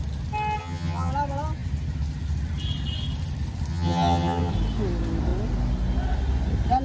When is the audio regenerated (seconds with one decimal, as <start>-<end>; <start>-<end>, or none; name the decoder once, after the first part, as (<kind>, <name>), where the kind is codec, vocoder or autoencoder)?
0.6-1.1 (vocoder, HiFi-GAN); 3.7-4.5